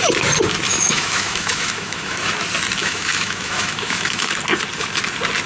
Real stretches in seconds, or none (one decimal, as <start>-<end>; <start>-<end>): 0.0-0.7; 2.3-2.8; 4.3-5.5